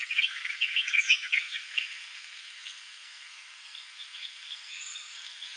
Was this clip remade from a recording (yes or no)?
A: yes